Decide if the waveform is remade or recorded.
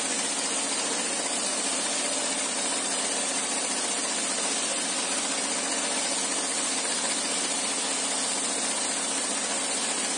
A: recorded